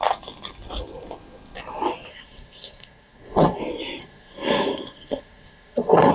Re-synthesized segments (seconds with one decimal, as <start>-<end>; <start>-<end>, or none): 2.1-3.6; 4.0-6.1